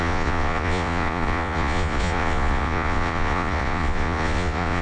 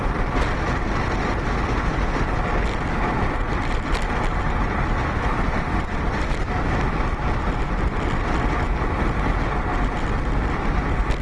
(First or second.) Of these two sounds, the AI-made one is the first